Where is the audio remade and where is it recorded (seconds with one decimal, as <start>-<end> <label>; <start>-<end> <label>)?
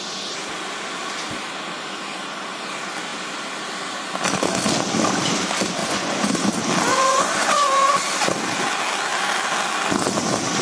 0.0-5.8 recorded; 5.8-6.5 remade; 6.5-6.9 recorded; 6.9-7.9 remade; 7.9-10.6 recorded